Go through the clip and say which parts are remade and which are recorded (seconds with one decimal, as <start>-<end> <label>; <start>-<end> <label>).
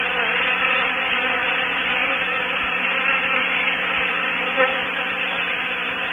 0.0-6.1 remade